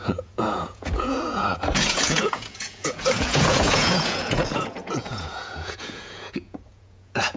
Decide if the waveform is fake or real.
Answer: fake